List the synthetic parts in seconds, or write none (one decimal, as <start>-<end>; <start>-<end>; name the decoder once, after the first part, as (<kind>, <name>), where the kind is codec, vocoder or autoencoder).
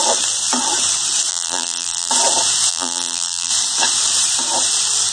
1.3-2.1 (vocoder, BigVGAN v2); 2.7-3.5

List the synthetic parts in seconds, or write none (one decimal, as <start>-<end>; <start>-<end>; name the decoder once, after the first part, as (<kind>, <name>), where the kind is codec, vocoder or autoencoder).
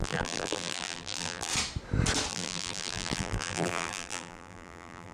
0.0-1.5 (vocoder, BigVGAN v2); 2.3-5.1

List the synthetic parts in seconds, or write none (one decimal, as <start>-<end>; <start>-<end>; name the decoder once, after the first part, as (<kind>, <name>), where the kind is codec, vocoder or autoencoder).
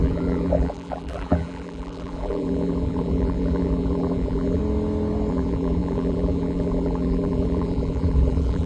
0.0-4.6 (vocoder, BigVGAN v2); 5.3-8.7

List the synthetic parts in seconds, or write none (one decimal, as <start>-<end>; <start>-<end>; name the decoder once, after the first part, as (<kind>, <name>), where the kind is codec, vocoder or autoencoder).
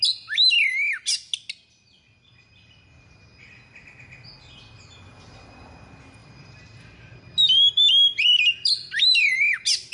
6.2-9.3 (vocoder, BigVGAN v2)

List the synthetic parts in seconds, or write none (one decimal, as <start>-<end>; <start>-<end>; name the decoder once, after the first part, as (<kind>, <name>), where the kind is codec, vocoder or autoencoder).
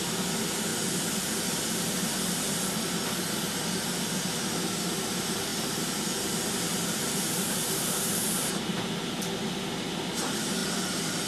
5.5-8.9 (vocoder, BigVGAN v2)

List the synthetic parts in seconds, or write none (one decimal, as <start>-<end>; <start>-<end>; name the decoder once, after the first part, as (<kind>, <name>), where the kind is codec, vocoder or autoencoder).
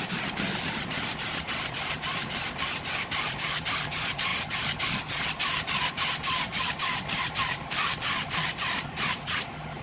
none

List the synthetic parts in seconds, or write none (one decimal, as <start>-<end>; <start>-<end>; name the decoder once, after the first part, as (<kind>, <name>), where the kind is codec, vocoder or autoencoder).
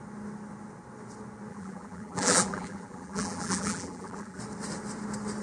1.5-4.4 (vocoder, BigVGAN v2)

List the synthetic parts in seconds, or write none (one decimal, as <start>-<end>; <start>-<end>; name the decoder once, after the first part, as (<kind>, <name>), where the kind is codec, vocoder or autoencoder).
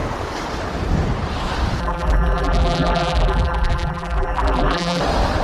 1.8-5.0 (vocoder, BigVGAN v2)